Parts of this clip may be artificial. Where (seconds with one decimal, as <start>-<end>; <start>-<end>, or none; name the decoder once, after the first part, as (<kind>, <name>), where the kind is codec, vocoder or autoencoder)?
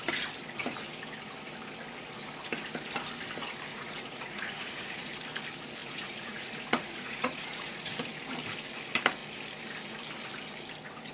3.7-5.1 (vocoder, Vocos); 5.8-7.8